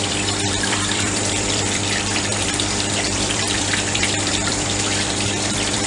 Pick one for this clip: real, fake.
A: fake